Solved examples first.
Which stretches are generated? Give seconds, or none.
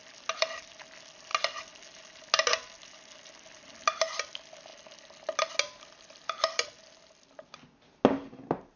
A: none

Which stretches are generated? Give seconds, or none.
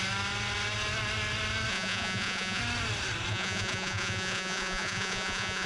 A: 1.7-2.6 (vocoder, Vocos); 3.3-5.7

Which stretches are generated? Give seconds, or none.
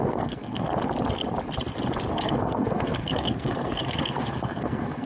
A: 0.0-0.7 (codec, SNAC); 2.1-5.1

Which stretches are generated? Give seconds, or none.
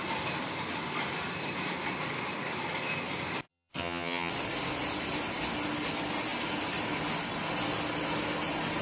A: 3.5-4.3 (vocoder, HiFi-GAN)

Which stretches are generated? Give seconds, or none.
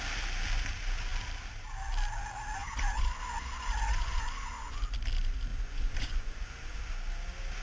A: 2.6-4.8 (vocoder, Vocos); 5.5-6.8